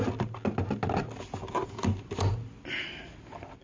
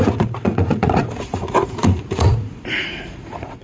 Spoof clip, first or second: second